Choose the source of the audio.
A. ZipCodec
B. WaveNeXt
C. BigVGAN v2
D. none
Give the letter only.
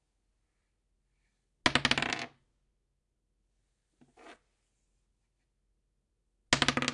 D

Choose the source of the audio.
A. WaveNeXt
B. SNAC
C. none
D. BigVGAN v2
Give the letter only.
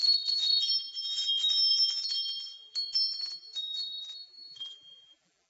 D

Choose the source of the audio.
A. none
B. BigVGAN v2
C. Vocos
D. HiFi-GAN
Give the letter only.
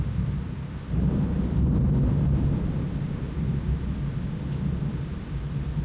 A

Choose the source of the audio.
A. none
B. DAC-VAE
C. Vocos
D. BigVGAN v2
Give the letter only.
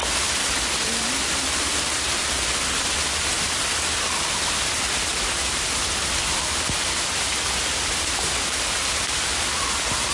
A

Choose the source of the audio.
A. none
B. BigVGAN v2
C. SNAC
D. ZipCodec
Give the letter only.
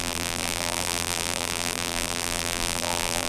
B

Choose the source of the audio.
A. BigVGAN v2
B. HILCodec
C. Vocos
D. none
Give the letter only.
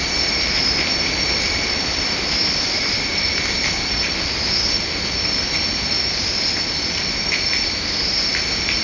A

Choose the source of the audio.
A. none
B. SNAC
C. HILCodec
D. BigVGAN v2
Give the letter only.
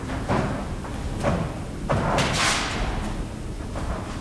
A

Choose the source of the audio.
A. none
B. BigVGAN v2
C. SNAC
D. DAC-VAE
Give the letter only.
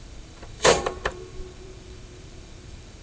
B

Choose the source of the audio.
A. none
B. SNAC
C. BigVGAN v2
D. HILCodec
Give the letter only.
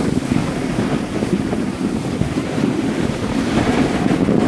A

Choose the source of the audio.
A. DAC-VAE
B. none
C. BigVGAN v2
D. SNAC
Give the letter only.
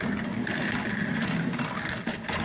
B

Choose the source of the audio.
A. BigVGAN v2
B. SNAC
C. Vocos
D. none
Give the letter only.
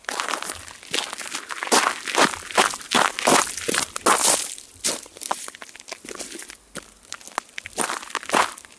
D